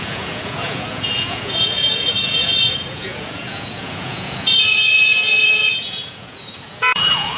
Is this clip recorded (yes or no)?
no